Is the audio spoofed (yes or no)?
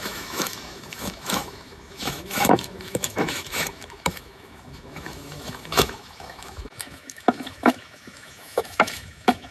yes